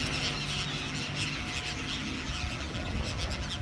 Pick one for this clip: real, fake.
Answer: real